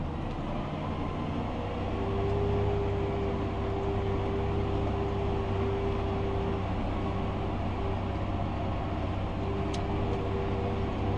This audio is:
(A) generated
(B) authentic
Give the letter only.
B